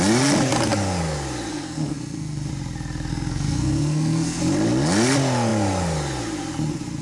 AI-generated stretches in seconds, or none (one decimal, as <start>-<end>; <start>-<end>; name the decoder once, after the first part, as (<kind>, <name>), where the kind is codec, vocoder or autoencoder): 1.5-2.5 (codec, SNAC); 3.1-4.4